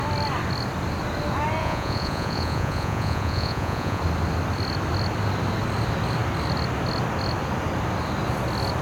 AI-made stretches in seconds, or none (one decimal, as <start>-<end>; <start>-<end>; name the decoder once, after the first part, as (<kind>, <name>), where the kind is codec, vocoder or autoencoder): 1.6-4.0 (vocoder, Vocos)